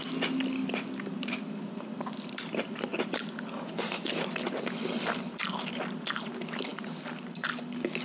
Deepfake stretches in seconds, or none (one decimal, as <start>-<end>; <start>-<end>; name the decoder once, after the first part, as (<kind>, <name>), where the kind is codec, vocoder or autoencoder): none